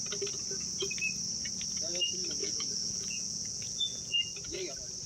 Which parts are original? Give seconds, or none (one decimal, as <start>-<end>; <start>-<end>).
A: 0.0-2.4; 4.3-5.1